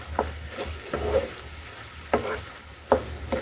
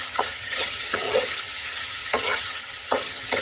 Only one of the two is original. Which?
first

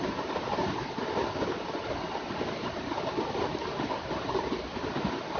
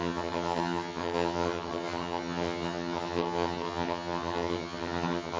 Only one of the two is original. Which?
first